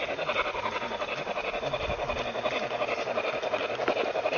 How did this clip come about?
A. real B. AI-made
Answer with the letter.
A